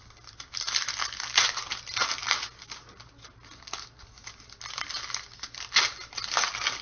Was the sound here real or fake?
real